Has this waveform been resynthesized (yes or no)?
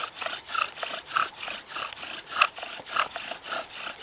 no